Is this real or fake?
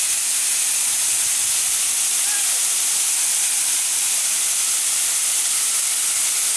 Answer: real